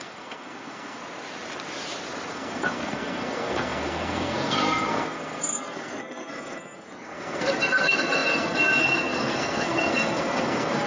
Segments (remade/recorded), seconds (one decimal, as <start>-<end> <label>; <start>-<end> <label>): 0.0-1.0 remade; 1.0-2.3 recorded; 2.3-10.9 remade